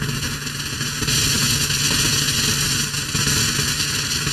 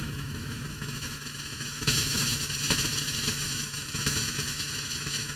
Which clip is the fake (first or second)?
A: second